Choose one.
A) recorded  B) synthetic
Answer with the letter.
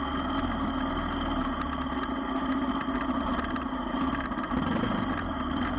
A